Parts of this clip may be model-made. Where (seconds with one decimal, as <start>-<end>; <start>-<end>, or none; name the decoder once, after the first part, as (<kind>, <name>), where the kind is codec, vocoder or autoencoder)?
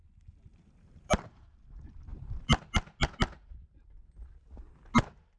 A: 0.5-1.7 (vocoder, BigVGAN v2); 2.1-2.6